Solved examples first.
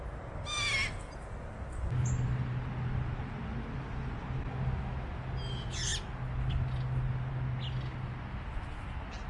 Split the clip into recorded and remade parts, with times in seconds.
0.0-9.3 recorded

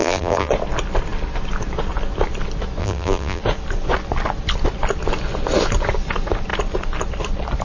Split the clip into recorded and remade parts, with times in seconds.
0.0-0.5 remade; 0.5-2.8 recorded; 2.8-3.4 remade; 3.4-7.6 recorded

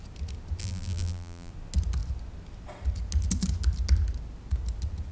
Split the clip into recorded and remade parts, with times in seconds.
0.0-0.6 recorded; 0.6-1.5 remade; 1.5-5.1 recorded

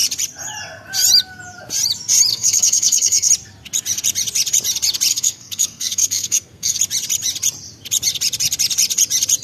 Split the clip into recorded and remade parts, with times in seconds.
0.0-2.3 recorded; 2.3-3.3 remade; 3.3-5.1 recorded; 5.1-6.8 remade; 6.8-9.4 recorded

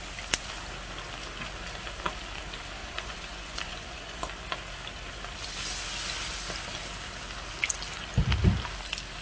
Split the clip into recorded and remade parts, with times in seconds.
0.0-2.8 recorded; 2.8-4.2 remade; 4.2-9.2 recorded